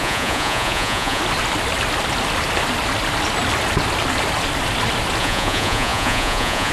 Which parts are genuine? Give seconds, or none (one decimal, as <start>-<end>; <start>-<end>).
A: 1.2-5.2